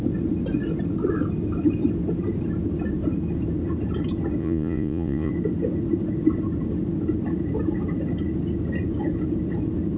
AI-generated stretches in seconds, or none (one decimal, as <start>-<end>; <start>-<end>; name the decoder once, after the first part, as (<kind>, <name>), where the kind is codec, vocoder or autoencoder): 4.4-5.3 (vocoder, Vocos)